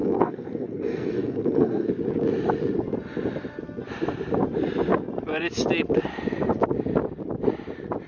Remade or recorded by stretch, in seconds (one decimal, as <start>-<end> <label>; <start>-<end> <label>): 0.0-1.9 remade; 1.9-8.1 recorded